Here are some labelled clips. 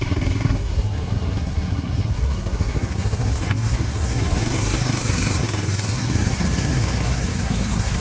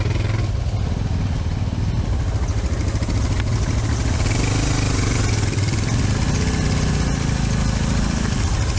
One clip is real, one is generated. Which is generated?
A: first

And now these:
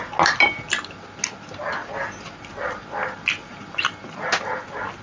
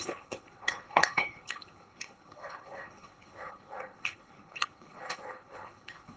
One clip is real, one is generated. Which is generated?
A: second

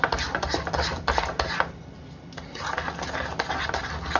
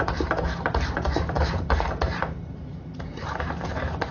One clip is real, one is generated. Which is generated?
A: second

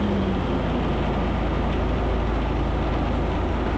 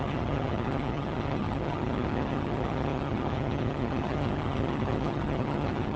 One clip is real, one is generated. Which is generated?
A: second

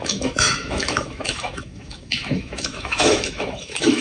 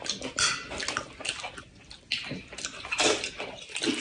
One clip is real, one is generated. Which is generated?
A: first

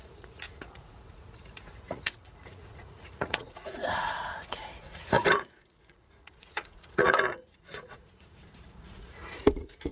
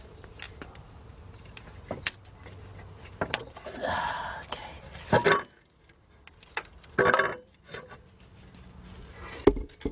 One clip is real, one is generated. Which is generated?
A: first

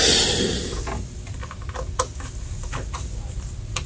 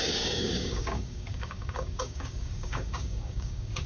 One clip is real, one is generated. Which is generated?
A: second